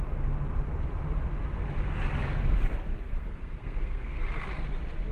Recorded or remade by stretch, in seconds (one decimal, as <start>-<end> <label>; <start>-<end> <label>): 0.0-2.7 recorded; 2.7-4.2 remade; 4.2-5.1 recorded